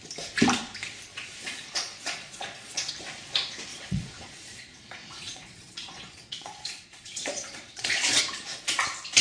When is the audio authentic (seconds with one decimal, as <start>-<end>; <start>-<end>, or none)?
0.0-1.1; 2.9-3.7; 8.2-9.2